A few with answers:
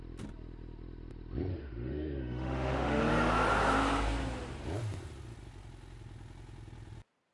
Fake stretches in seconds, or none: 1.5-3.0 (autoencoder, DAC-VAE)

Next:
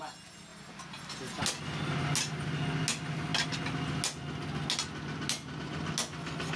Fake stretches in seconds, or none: none